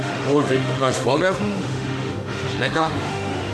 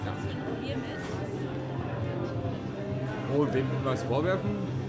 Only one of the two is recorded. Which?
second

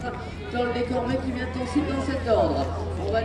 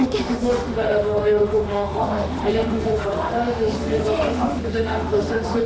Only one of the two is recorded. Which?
first